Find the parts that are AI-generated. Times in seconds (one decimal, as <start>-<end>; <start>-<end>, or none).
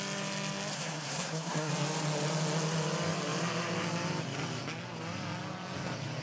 0.7-1.7